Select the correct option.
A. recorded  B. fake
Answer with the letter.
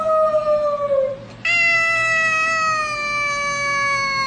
A